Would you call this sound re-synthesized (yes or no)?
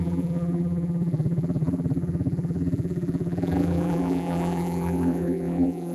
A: yes